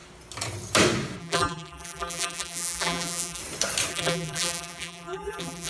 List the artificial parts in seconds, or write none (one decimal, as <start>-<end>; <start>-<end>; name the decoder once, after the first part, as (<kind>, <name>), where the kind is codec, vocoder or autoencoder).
1.2-3.4 (vocoder, BigVGAN v2); 3.9-5.7